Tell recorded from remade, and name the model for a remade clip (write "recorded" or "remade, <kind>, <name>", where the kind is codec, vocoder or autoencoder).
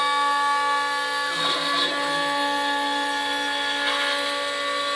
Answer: recorded